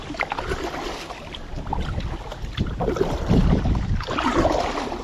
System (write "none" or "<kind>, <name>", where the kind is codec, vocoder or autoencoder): vocoder, BigVGAN v2